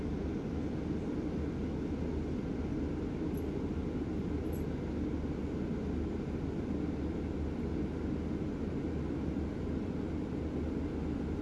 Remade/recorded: recorded